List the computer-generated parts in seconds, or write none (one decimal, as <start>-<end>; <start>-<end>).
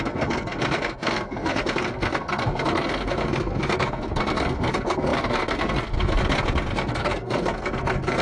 0.0-6.2; 6.9-8.2